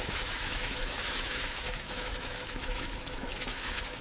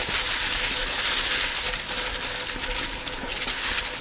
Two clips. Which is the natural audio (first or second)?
second